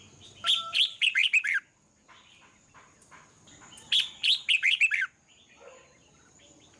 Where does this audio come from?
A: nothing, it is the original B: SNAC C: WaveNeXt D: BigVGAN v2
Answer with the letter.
A